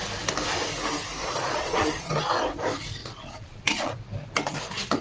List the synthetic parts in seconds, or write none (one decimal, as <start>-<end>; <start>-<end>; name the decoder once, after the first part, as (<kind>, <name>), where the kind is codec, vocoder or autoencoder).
1.2-2.2 (vocoder, Vocos); 3.0-3.9